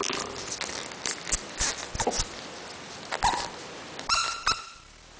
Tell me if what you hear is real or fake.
real